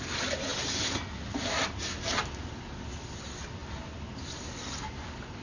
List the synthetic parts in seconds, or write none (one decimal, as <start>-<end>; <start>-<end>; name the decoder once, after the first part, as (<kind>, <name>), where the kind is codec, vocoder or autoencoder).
none